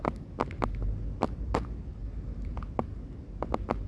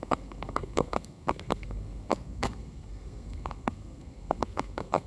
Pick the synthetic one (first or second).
second